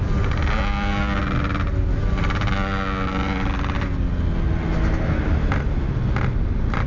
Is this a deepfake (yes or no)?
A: no